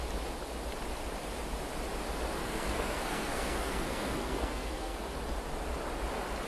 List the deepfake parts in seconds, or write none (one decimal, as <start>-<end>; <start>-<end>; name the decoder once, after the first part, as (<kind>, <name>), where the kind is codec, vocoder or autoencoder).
2.4-5.0 (codec, SNAC)